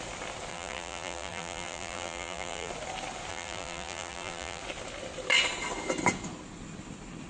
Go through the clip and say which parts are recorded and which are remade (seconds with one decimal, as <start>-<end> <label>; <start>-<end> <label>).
0.0-0.5 recorded; 0.5-2.7 remade; 2.7-3.3 recorded; 3.3-4.6 remade; 4.6-7.3 recorded